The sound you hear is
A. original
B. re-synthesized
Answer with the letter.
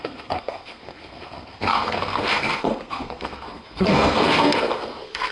B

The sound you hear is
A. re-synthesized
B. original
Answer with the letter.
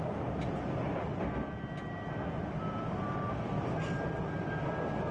B